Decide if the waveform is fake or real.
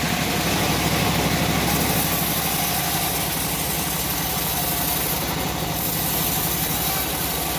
real